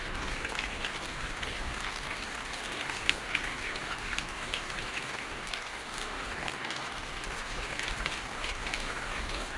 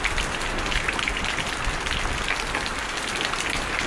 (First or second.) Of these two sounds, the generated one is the first